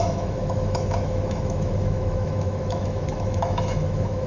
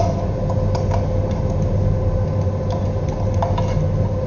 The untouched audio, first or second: second